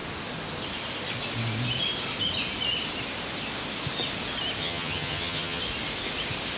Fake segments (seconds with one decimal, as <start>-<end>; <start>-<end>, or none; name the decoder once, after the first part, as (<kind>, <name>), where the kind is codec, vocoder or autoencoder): 4.6-5.6 (vocoder, HiFi-GAN)